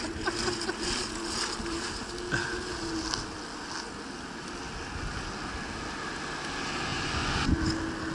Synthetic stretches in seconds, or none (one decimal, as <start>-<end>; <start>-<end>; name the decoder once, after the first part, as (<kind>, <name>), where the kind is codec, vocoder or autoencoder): 6.9-7.6 (vocoder, Vocos)